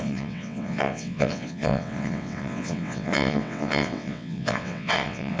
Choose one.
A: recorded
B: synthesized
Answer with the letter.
B